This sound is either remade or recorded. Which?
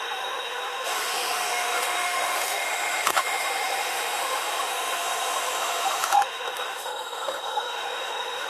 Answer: remade